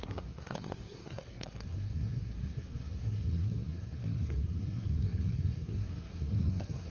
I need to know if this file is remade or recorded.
remade